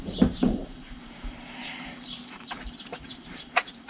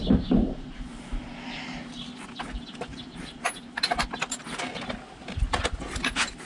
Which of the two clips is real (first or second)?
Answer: second